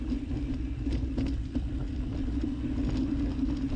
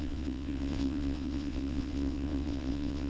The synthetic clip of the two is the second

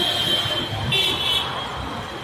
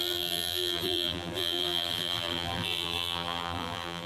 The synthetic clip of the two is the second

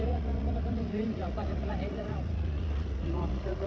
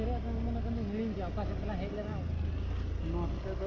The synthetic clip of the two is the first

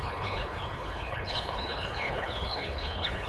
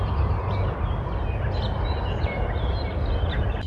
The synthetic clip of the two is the first